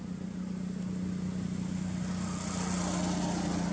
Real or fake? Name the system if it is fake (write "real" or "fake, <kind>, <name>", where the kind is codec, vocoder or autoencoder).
real